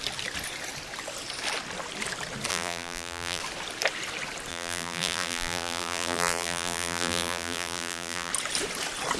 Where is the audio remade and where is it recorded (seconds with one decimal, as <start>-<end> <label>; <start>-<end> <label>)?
0.0-2.5 recorded; 2.5-3.4 remade; 3.4-4.5 recorded; 4.5-8.3 remade; 8.3-9.2 recorded